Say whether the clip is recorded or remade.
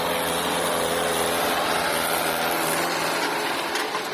recorded